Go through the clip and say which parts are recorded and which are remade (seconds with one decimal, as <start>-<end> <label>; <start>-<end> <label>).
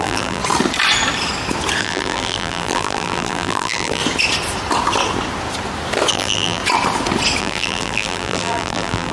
0.0-0.4 remade; 0.4-1.8 recorded; 1.8-4.0 remade; 4.0-6.1 recorded; 6.1-6.6 remade; 6.6-7.4 recorded; 7.4-9.1 remade